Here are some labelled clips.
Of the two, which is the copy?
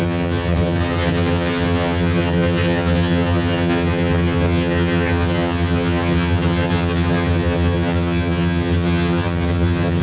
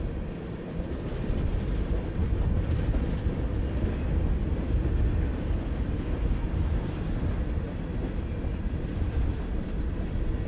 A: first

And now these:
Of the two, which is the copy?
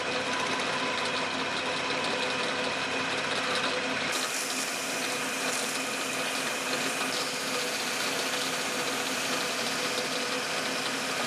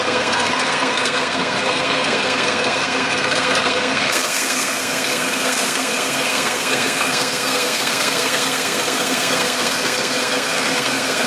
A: second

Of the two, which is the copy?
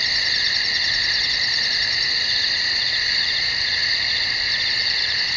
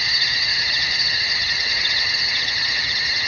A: second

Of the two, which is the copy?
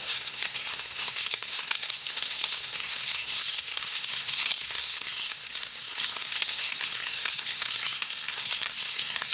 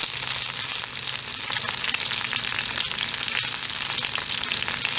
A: first